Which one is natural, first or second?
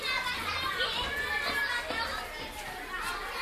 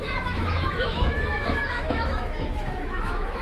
first